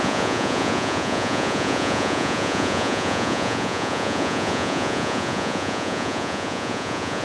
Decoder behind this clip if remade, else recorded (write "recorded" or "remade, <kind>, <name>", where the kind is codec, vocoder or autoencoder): remade, vocoder, Vocos